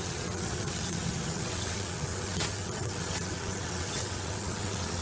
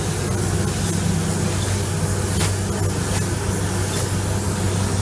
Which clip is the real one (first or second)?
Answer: second